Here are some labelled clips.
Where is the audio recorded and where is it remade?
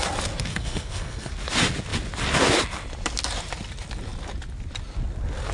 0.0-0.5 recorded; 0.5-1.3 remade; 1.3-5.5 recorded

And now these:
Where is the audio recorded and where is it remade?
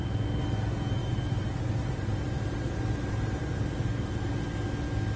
0.0-1.0 recorded; 1.0-4.1 remade; 4.1-5.2 recorded